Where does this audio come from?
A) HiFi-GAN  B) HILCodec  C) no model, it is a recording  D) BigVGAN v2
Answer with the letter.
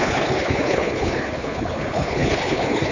B